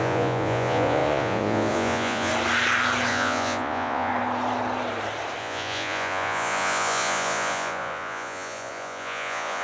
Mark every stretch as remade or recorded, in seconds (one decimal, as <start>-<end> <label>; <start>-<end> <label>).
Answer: 0.0-2.3 remade; 2.3-3.1 recorded; 3.1-4.1 remade; 4.1-5.4 recorded; 5.4-9.6 remade

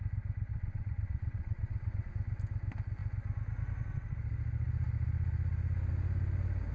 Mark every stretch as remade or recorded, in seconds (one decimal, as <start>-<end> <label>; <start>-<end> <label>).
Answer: 0.0-0.5 recorded; 0.5-2.1 remade; 2.1-6.7 recorded

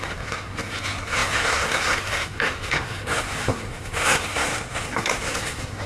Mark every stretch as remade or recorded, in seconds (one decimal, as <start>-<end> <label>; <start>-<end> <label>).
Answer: 0.0-5.9 remade

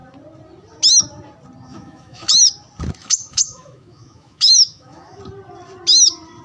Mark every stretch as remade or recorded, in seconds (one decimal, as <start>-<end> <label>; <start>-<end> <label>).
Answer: 0.0-1.7 recorded; 1.7-2.3 remade; 2.3-3.0 recorded; 3.0-5.2 remade; 5.2-6.4 recorded

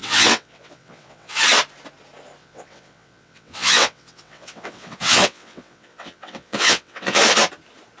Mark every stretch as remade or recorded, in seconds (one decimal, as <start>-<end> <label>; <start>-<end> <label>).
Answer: 0.0-1.4 remade; 1.4-2.4 recorded; 2.4-7.2 remade; 7.2-8.0 recorded

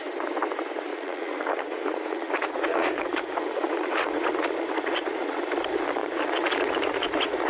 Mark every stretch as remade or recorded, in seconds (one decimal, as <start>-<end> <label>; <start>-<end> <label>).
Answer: 0.0-0.9 recorded; 0.9-5.4 remade; 5.4-6.0 recorded; 6.0-7.5 remade

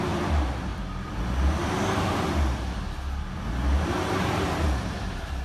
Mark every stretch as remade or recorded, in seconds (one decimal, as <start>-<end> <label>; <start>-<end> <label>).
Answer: 0.0-0.7 remade; 0.7-3.9 recorded; 3.9-5.4 remade

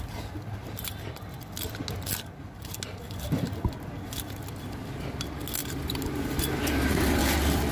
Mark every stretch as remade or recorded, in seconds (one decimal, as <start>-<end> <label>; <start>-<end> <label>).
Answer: 0.0-5.6 recorded; 5.6-7.1 remade; 7.1-7.7 recorded